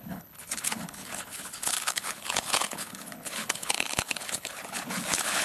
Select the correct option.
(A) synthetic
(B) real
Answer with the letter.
A